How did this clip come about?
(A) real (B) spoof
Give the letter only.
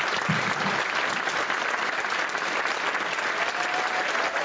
A